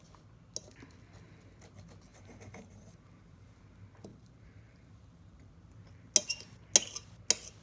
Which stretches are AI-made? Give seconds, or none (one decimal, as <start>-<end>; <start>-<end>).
2.1-3.6; 4.1-5.5